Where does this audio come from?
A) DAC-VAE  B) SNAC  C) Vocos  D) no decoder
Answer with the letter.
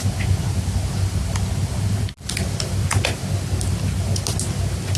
D